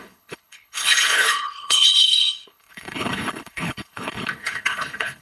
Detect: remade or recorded remade